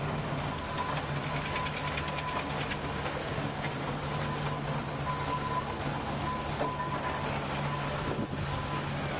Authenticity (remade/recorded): recorded